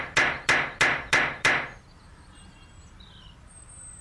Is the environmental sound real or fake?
real